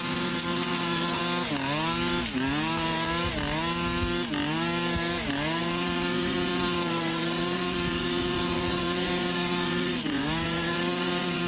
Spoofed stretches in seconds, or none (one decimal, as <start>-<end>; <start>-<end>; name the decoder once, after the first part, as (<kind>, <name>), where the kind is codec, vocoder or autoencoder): 0.0-1.2 (vocoder, Vocos); 5.6-11.5